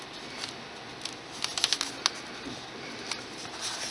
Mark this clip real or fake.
real